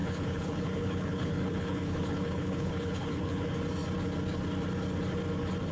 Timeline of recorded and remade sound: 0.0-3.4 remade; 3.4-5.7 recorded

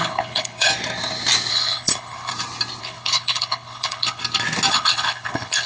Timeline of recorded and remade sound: 0.0-0.7 remade; 0.7-1.5 recorded; 1.5-2.3 remade; 2.3-2.8 recorded; 2.8-4.2 remade; 4.2-4.7 recorded; 4.7-5.7 remade

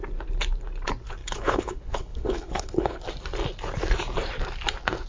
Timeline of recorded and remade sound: 0.0-1.2 recorded; 1.2-3.0 remade; 3.0-5.1 recorded